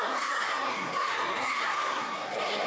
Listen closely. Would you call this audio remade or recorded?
remade